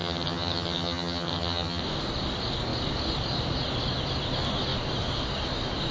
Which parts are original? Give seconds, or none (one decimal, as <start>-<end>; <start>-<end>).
1.8-5.9